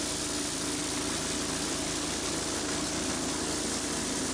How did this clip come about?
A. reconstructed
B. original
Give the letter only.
B